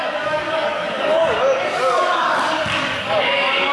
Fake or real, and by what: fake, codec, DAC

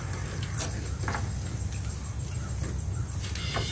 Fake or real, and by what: real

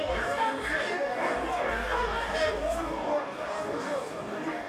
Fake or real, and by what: fake, codec, DAC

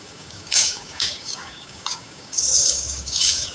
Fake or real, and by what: fake, codec, DAC